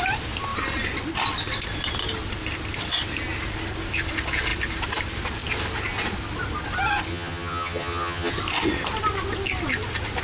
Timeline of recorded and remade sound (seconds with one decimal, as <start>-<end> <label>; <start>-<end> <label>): 0.0-7.1 recorded; 7.1-8.3 remade; 8.3-10.2 recorded